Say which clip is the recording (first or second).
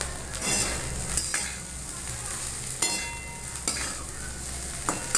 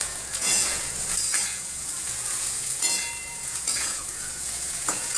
first